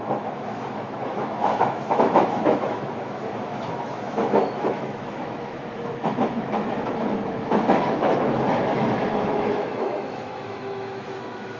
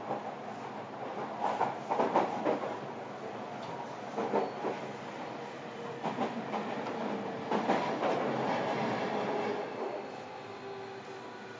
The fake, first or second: first